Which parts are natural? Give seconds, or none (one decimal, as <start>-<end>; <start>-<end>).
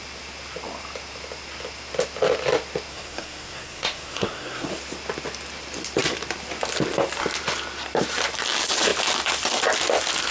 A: 0.0-2.9; 4.7-10.3